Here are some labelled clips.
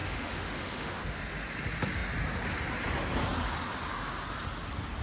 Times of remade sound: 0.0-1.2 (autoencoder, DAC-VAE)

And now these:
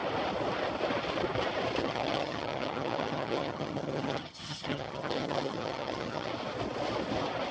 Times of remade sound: 1.8-6.3 (vocoder, HiFi-GAN)